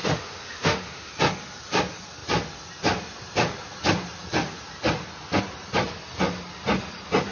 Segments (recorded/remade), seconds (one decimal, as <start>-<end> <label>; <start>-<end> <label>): 0.0-1.1 remade; 1.1-7.3 recorded